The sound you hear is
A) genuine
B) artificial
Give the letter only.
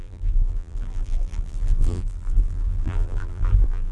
B